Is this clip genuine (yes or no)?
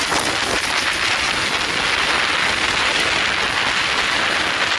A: yes